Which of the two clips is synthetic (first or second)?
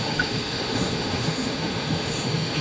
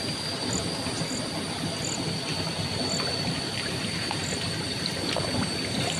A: first